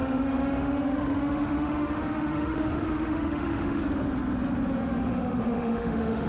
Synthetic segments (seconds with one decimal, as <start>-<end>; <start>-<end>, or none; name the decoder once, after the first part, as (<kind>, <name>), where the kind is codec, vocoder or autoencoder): 0.0-3.8 (autoencoder, DAC-VAE); 4.8-6.3